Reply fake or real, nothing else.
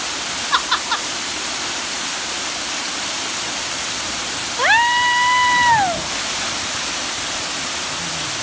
real